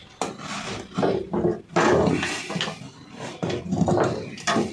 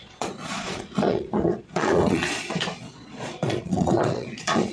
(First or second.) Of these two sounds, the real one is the first